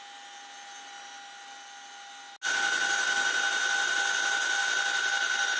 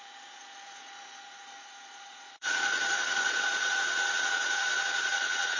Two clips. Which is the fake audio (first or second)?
second